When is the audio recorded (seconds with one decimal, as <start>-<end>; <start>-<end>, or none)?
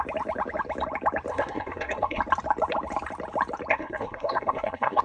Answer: 0.0-1.3; 2.2-3.7